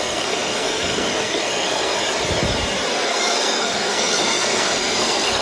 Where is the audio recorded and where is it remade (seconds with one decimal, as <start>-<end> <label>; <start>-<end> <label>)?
0.0-2.0 remade; 2.0-2.9 recorded; 2.9-5.4 remade